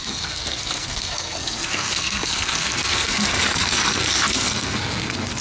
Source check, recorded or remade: remade